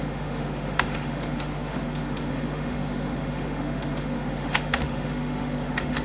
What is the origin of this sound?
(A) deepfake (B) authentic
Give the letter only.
A